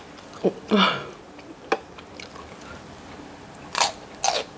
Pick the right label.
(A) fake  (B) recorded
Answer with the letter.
B